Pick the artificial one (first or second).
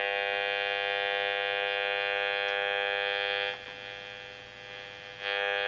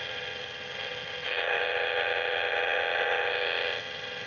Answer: second